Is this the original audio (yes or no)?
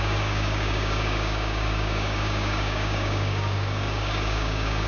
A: no